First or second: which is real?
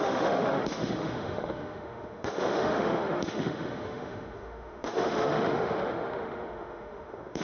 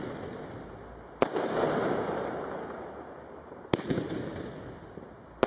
second